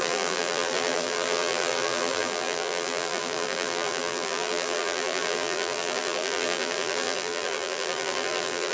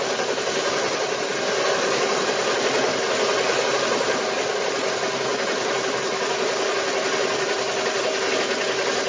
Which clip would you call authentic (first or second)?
second